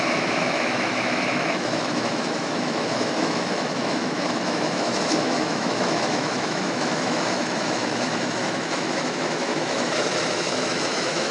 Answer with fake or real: fake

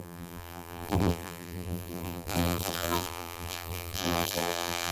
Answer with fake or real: fake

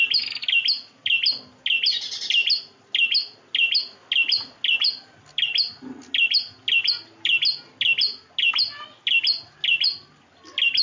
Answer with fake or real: real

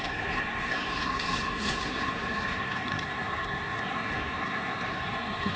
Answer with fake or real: fake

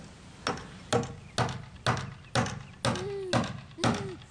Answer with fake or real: real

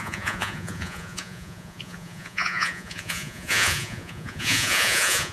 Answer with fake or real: fake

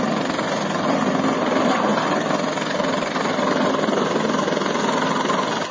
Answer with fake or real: real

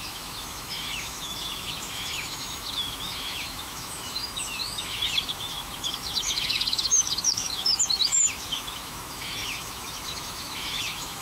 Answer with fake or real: fake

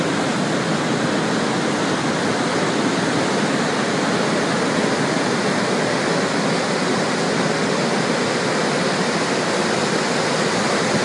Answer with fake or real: real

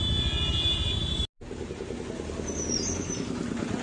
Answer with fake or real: real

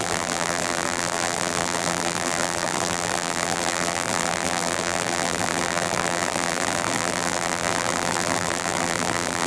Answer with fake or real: fake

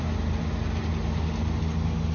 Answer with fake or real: real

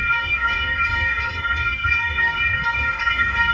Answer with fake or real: fake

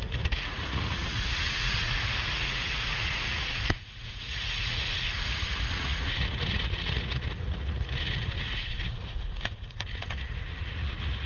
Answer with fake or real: fake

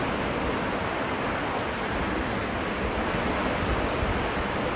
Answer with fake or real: real